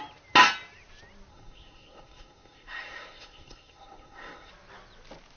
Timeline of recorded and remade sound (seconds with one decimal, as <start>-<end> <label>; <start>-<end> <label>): 0.0-1.3 recorded; 1.3-4.5 remade; 4.5-5.4 recorded